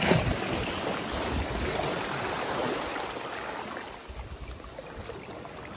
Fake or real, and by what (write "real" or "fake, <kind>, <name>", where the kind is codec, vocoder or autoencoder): real